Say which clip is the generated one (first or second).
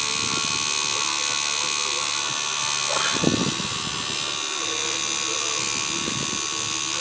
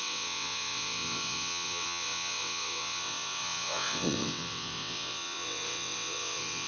second